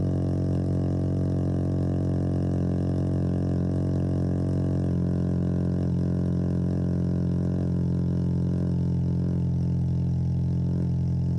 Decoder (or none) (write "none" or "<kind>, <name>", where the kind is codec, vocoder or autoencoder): none